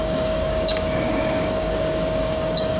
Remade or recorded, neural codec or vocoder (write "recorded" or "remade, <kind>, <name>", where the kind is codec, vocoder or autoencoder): remade, codec, DAC